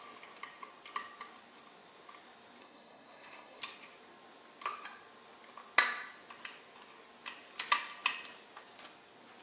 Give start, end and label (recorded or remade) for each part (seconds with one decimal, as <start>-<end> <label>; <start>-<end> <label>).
0.0-2.6 recorded; 2.6-3.6 remade; 3.6-9.4 recorded